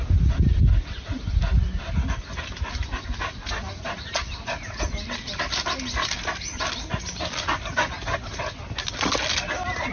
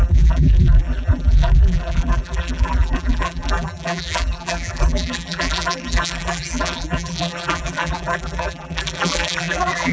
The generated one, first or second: second